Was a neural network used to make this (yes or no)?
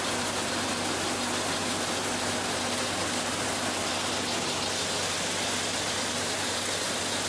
no